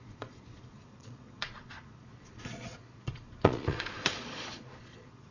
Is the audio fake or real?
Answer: fake